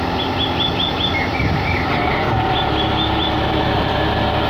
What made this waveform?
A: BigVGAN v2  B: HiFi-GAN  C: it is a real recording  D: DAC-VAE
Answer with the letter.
A